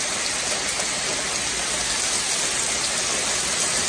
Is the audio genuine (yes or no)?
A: yes